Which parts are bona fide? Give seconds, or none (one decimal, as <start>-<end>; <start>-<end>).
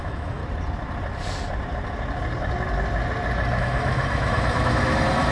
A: 0.4-3.6